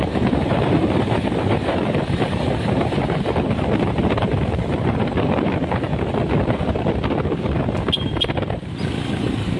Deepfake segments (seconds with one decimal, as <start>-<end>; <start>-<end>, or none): 0.0-5.9; 9.1-9.6